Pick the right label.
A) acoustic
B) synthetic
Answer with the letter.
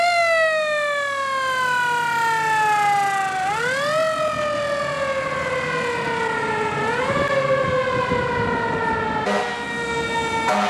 A